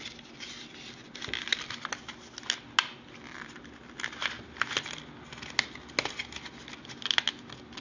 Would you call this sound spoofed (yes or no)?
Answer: no